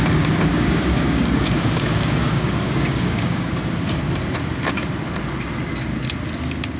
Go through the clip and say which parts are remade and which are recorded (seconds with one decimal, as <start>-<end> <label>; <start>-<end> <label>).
0.0-0.5 recorded; 0.5-3.5 remade; 3.5-6.8 recorded